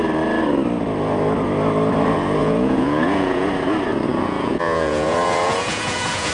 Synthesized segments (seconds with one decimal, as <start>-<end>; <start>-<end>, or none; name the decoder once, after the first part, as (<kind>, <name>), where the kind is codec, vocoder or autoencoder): 2.4-3.5 (vocoder, Vocos); 4.1-6.3